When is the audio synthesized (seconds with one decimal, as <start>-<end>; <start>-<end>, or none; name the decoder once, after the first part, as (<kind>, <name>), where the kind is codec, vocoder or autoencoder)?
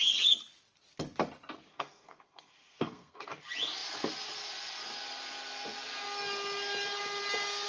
1.7-3.3 (codec, SNAC)